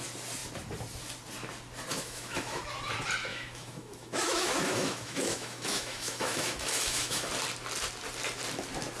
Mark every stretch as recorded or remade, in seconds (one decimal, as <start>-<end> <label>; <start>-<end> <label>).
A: 0.0-1.9 recorded; 1.9-2.6 remade; 2.6-3.3 recorded; 3.3-7.3 remade; 7.3-9.0 recorded